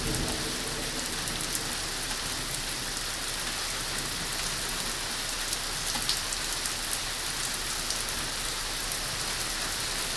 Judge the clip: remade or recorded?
recorded